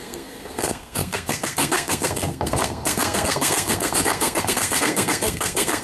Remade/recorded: remade